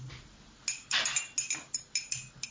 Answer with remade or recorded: recorded